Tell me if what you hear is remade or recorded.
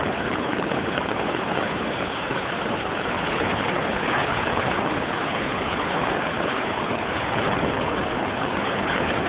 remade